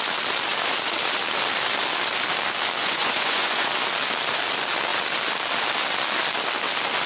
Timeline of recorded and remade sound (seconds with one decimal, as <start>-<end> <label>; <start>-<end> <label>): 0.0-2.8 recorded; 2.8-3.7 remade; 3.7-7.1 recorded